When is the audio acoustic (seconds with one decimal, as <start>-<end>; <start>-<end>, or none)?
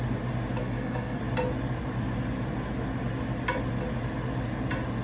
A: 0.0-0.6; 1.2-5.0